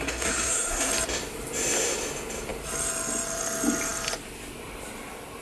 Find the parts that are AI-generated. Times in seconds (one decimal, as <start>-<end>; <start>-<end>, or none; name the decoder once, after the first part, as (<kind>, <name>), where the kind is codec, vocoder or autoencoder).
0.0-0.9 (codec, SNAC)